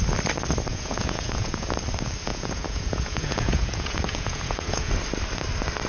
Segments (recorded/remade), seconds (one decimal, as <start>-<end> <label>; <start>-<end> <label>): 0.0-0.7 recorded; 0.7-1.7 remade; 1.7-2.3 recorded; 2.3-4.9 remade; 4.9-5.9 recorded